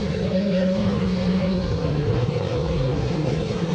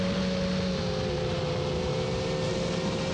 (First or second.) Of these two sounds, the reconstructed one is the first